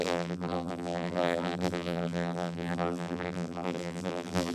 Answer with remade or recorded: remade